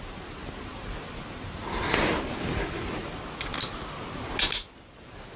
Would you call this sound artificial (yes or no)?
no